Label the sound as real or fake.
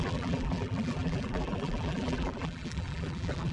fake